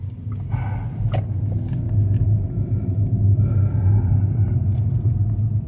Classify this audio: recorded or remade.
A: recorded